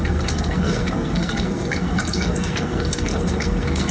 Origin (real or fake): fake